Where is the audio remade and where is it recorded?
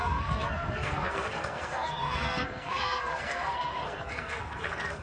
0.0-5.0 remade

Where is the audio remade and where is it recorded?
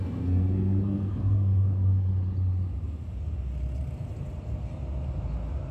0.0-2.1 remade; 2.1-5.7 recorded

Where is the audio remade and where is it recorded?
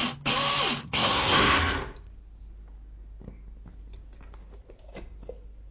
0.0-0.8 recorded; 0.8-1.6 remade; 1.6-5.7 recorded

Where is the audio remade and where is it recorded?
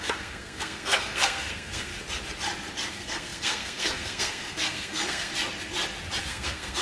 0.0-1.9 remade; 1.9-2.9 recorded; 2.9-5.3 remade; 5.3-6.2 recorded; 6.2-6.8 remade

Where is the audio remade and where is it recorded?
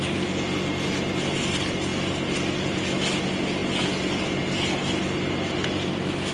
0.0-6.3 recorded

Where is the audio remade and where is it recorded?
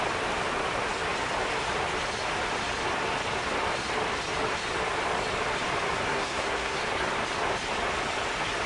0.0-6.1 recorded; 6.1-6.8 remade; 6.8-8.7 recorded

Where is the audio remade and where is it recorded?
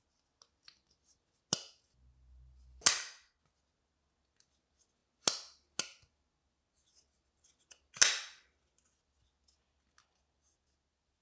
0.0-2.9 recorded; 2.9-3.4 remade; 3.4-11.2 recorded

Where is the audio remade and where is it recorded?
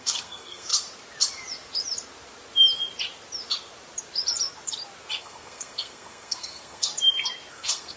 0.0-0.7 remade; 0.7-5.2 recorded; 5.2-6.9 remade; 6.9-7.5 recorded; 7.5-8.0 remade